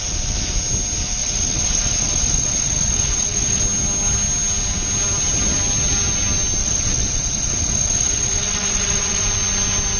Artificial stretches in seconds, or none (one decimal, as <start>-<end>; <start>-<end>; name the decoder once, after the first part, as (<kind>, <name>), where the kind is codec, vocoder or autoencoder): 1.2-3.6 (vocoder, Vocos); 6.6-9.2